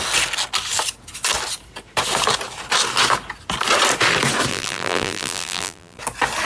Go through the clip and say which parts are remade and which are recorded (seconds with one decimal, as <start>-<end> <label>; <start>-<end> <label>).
0.0-4.5 recorded; 4.5-6.0 remade; 6.0-6.4 recorded